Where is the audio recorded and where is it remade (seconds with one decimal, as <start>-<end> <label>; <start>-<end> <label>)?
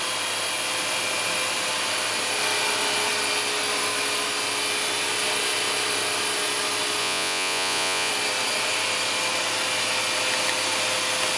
0.0-7.0 recorded; 7.0-8.1 remade; 8.1-11.4 recorded